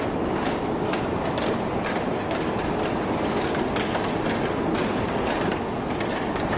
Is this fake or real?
real